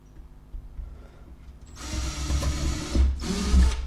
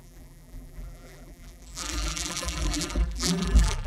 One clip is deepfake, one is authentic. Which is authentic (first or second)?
first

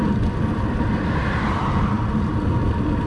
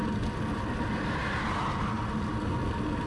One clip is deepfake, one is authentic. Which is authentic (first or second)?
second